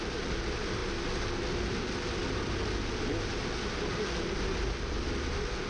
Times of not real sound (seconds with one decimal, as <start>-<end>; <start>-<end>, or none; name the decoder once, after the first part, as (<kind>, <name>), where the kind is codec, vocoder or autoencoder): none